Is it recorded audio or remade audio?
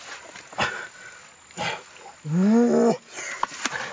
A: recorded